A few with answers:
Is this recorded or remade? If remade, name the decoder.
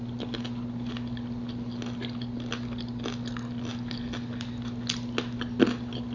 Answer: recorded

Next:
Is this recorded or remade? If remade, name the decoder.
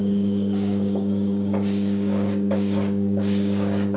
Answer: remade, codec, DAC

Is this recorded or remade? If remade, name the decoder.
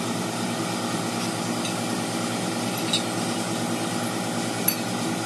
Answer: recorded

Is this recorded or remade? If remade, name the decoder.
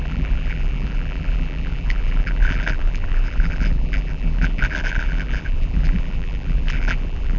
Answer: remade, vocoder, BigVGAN v2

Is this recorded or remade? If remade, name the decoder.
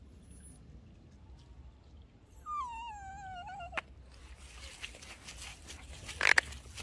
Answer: recorded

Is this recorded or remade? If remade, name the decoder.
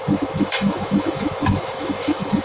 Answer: remade, autoencoder, DAC-VAE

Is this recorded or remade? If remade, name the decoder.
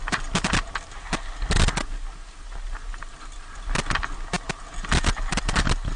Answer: recorded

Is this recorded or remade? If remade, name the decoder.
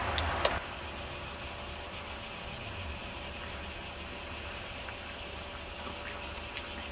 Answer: recorded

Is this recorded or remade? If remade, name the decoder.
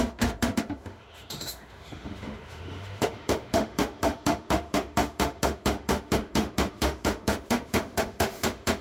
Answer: remade, autoencoder, DAC-VAE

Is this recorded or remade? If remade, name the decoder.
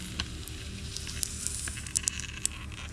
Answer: recorded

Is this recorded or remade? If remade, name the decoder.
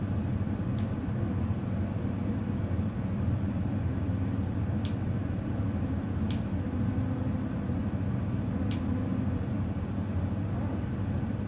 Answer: recorded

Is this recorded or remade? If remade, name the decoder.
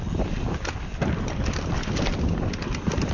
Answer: recorded